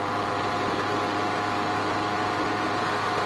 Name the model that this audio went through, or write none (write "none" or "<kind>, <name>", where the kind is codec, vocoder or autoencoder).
none